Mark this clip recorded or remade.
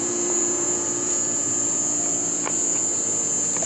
remade